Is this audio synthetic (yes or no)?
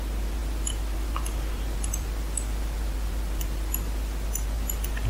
no